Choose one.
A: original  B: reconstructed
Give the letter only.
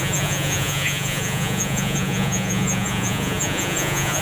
B